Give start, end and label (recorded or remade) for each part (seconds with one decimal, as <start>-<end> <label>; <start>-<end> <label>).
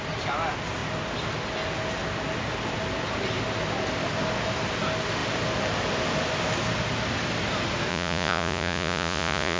0.0-7.9 recorded; 7.9-9.6 remade